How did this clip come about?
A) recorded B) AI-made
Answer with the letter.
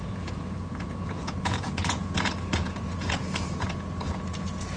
B